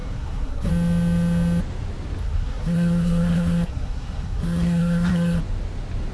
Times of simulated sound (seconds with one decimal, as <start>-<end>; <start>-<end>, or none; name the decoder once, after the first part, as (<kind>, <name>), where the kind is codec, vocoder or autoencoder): 0.0-0.7 (codec, SNAC); 2.2-5.4